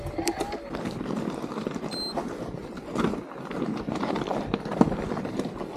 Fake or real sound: real